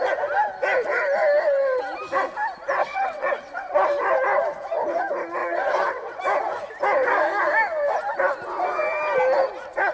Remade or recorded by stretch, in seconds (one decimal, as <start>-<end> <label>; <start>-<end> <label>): 0.0-2.8 recorded; 2.8-3.7 remade; 3.7-5.4 recorded; 5.4-6.2 remade; 6.2-9.9 recorded